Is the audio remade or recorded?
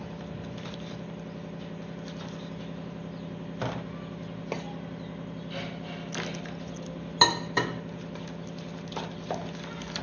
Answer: recorded